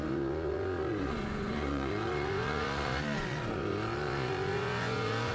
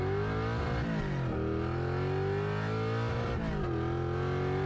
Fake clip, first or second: first